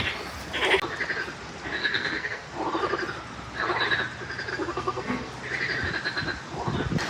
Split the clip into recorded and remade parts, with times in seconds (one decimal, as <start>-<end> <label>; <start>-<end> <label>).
0.0-1.8 recorded; 1.8-2.5 remade; 2.5-4.5 recorded; 4.5-5.3 remade; 5.3-7.1 recorded